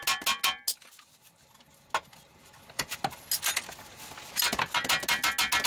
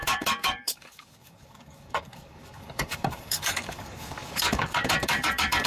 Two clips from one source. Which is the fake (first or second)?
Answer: second